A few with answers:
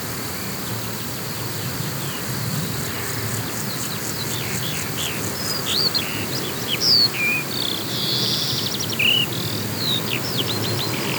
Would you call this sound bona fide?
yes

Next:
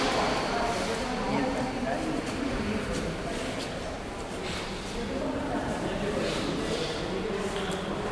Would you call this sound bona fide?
yes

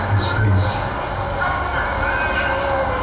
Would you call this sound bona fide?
yes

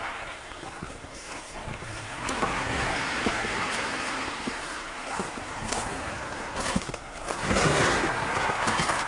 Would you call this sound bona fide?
no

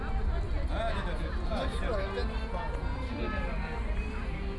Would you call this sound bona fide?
yes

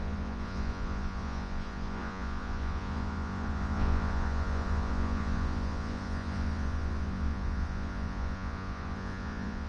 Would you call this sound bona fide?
no